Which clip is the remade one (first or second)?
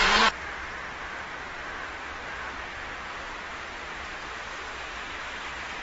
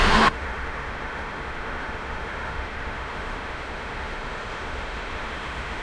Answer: second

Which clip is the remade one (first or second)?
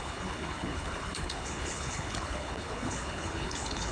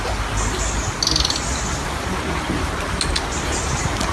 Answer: first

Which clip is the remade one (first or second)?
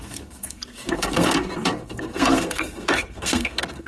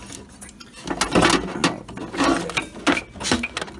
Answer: first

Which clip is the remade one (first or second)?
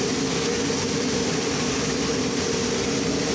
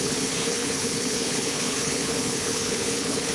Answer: second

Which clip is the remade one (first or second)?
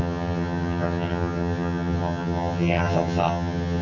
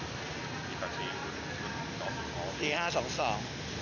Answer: first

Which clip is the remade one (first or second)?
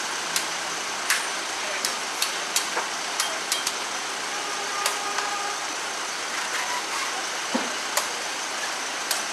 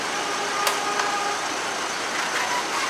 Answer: first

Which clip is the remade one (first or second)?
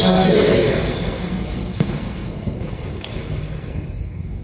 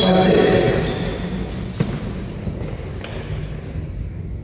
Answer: first